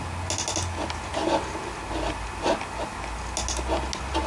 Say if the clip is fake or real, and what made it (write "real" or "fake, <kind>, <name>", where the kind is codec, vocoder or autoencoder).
real